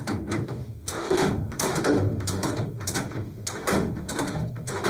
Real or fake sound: fake